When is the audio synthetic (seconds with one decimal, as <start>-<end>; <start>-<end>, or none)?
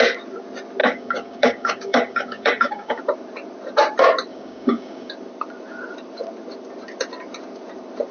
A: 0.8-3.0; 4.3-5.1